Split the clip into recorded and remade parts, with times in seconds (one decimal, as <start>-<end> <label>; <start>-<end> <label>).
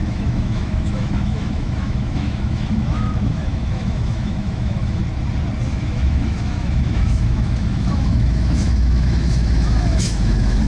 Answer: 0.0-5.0 remade; 5.0-5.7 recorded; 5.7-10.7 remade